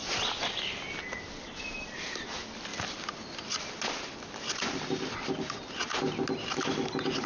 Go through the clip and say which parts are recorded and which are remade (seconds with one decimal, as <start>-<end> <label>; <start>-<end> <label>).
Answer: 0.0-7.3 recorded